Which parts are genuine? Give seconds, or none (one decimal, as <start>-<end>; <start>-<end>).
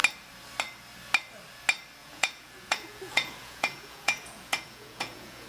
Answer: 0.0-2.0